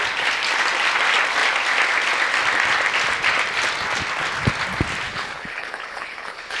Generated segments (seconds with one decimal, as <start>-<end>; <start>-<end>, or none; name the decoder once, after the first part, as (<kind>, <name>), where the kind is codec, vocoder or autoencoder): 5.1-6.6 (codec, HILCodec)

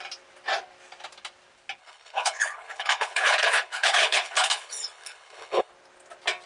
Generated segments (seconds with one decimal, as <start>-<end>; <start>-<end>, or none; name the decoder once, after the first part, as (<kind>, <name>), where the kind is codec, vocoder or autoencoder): 1.8-5.7 (codec, HILCodec)

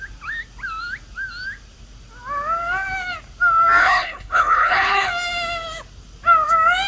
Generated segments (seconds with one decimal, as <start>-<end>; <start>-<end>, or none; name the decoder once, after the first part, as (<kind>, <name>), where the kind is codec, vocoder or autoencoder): 3.8-5.1 (codec, HILCodec)

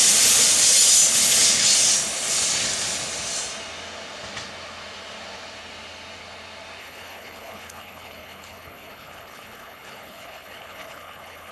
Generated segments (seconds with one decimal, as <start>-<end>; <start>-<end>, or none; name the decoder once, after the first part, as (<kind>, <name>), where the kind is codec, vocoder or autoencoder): 6.8-11.5 (codec, HILCodec)

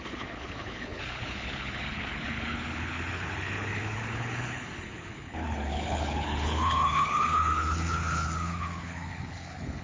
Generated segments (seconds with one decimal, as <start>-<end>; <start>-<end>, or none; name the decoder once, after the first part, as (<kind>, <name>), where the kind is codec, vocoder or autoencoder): 0.0-9.8 (codec, HILCodec)

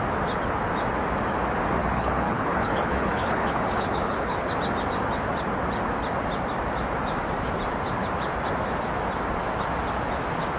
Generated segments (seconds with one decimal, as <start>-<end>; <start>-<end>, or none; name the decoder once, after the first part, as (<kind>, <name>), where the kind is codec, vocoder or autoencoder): 1.8-4.5 (codec, HILCodec)

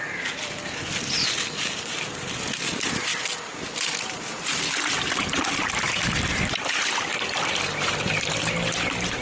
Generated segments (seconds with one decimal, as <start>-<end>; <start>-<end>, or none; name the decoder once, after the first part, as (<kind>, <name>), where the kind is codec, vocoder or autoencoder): none